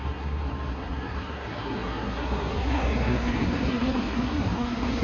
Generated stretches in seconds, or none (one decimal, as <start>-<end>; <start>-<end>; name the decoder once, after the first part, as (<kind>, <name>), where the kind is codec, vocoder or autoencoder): 0.0-5.0 (codec, SNAC)